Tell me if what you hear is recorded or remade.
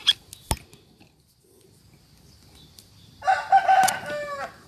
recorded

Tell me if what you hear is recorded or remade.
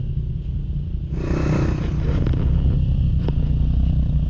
recorded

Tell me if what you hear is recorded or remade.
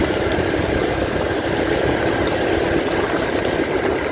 recorded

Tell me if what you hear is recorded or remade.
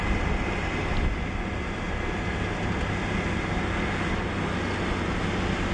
recorded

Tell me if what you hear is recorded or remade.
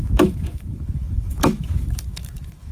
remade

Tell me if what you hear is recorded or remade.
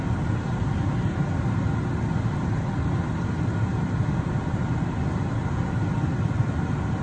recorded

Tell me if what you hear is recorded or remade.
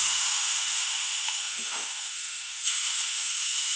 remade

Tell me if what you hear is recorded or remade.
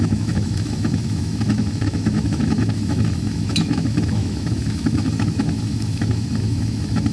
remade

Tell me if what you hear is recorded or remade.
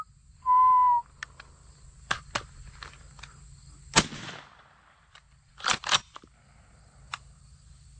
recorded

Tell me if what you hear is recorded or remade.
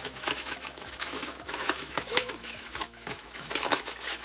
remade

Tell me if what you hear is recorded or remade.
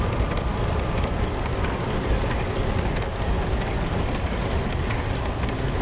recorded